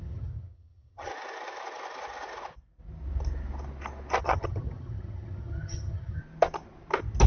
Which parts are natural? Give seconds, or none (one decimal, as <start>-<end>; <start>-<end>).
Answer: 1.1-4.2; 6.2-7.3